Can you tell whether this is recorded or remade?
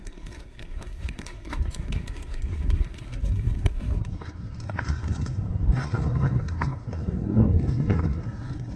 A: remade